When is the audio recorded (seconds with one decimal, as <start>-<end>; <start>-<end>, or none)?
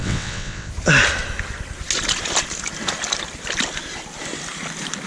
0.7-5.1